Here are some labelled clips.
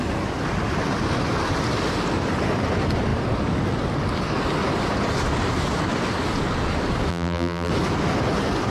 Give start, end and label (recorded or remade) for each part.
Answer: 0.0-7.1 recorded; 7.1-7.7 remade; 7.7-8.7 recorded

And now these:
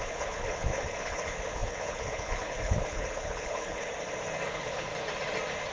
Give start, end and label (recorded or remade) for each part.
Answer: 0.0-3.9 remade; 3.9-4.5 recorded; 4.5-4.9 remade; 4.9-5.7 recorded

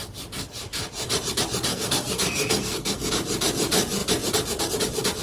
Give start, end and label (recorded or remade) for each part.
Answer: 0.0-1.7 recorded; 1.7-3.1 remade; 3.1-5.2 recorded

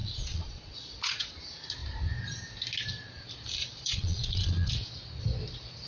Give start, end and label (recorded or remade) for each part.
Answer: 0.0-1.3 remade; 1.3-3.6 recorded; 3.6-4.7 remade; 4.7-5.9 recorded

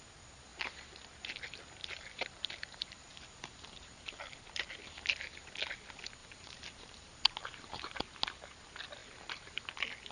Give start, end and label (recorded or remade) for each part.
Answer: 0.0-0.5 recorded; 0.5-1.4 remade; 1.4-1.8 recorded; 1.8-4.2 remade; 4.2-6.2 recorded; 6.2-8.0 remade; 8.0-9.0 recorded; 9.0-9.6 remade; 9.6-10.1 recorded

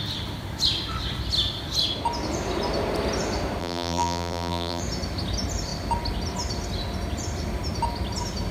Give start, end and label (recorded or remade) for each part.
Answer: 0.0-3.6 recorded; 3.6-4.8 remade; 4.8-8.5 recorded

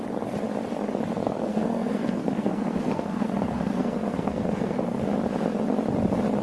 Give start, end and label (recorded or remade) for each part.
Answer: 0.0-1.2 recorded; 1.2-5.0 remade; 5.0-6.4 recorded